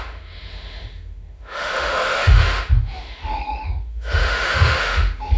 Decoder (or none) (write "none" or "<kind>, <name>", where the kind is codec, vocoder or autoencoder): autoencoder, DAC-VAE